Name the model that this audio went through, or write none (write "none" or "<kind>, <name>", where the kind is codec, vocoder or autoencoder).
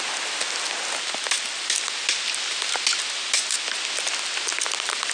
none